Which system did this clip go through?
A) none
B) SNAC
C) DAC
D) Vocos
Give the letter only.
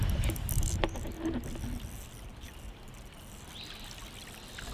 A